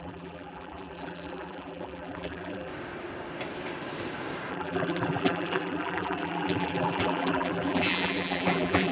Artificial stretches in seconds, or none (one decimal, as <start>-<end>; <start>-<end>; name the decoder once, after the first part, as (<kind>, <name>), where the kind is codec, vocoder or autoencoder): 0.0-2.7 (vocoder, BigVGAN v2); 4.5-8.9